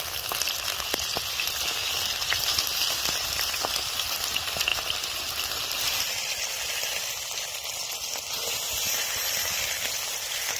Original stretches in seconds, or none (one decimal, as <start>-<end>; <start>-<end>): 0.0-4.7; 5.4-10.6